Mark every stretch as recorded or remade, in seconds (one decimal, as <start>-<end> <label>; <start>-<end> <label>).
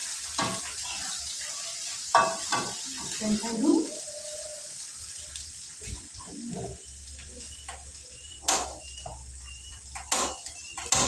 0.0-11.1 recorded